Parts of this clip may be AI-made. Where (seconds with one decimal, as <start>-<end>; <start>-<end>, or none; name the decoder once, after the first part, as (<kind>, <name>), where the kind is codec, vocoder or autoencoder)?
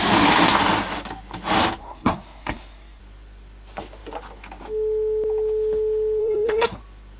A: 1.8-3.0 (codec, SNAC); 6.2-6.8